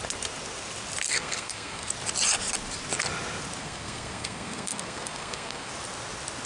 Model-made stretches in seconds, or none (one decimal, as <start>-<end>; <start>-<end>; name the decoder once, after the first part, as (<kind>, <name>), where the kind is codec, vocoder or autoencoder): 1.1-1.9 (codec, SNAC); 3.6-5.7